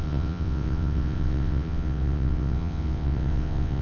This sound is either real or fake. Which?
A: fake